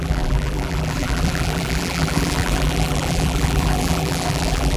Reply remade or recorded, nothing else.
remade